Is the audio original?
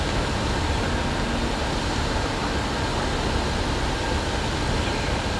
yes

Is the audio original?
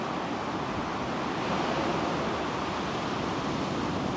yes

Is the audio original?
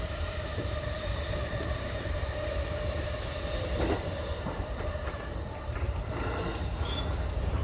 no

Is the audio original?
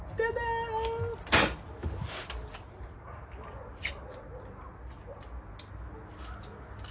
yes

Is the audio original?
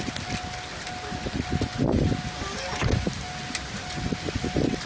yes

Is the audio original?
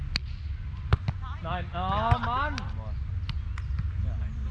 yes